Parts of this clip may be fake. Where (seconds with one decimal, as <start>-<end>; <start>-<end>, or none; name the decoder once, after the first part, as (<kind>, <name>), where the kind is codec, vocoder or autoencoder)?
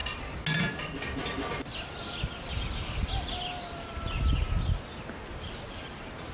none